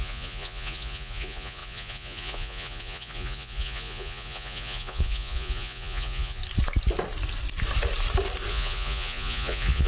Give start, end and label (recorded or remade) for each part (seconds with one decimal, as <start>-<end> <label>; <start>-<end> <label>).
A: 0.0-6.4 remade; 6.4-8.5 recorded; 8.5-9.9 remade